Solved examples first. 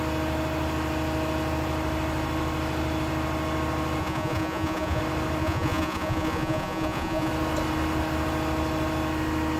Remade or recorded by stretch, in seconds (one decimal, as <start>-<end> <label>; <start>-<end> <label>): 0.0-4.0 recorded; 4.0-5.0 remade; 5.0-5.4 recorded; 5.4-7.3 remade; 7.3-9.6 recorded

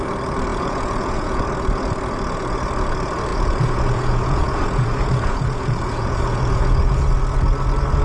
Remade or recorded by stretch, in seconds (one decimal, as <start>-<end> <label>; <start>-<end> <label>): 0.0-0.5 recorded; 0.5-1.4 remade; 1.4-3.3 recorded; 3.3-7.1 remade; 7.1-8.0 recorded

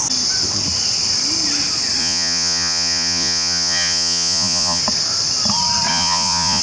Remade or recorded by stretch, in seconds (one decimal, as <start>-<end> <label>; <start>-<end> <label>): 0.0-2.0 recorded; 2.0-4.8 remade; 4.8-5.9 recorded; 5.9-6.6 remade

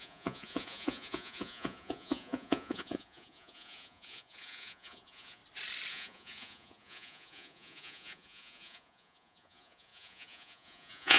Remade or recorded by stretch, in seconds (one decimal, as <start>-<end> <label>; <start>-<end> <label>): 0.0-5.4 remade; 5.4-5.9 recorded; 5.9-11.2 remade

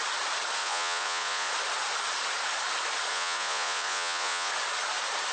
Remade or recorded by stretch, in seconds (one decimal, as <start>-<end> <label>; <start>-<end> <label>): 0.0-0.6 recorded; 0.6-1.5 remade; 1.5-3.1 recorded; 3.1-4.5 remade; 4.5-5.3 recorded

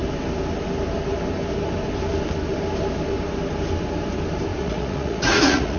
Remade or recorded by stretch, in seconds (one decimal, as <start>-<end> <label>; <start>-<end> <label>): 0.0-4.5 recorded; 4.5-5.8 remade

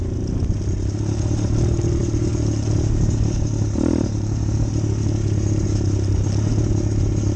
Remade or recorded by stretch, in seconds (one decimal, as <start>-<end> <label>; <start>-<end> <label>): 0.0-7.4 recorded

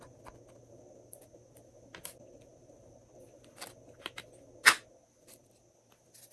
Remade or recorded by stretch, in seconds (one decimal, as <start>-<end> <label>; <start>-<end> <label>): 0.0-6.3 recorded